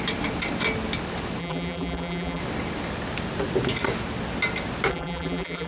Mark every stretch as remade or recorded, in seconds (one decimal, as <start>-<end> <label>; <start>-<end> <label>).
0.0-1.4 recorded; 1.4-2.4 remade; 2.4-4.9 recorded; 4.9-5.7 remade